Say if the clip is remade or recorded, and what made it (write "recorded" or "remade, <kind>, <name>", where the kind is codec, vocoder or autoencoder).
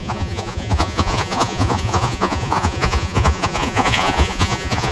remade, vocoder, Vocos